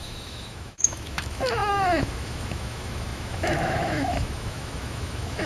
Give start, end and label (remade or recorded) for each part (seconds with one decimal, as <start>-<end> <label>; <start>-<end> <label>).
0.0-5.5 remade